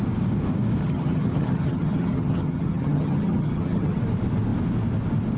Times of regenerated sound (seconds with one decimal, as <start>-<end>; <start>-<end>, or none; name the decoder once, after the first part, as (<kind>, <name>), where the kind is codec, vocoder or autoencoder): 0.8-4.0 (vocoder, HiFi-GAN)